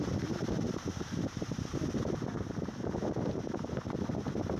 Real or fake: real